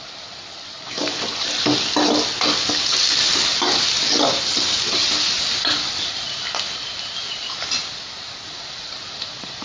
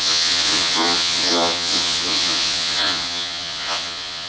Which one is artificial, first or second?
second